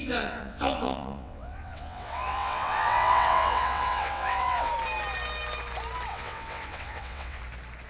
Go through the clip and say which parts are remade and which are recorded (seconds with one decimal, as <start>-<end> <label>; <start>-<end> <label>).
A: 0.0-4.7 remade; 4.7-6.1 recorded; 6.1-7.4 remade; 7.4-7.9 recorded